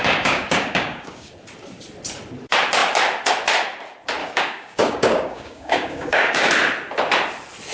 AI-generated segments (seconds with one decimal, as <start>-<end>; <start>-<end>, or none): 0.0-1.3; 4.2-6.5